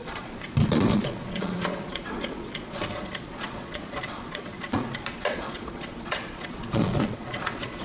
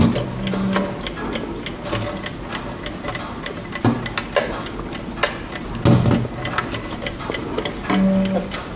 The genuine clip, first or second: second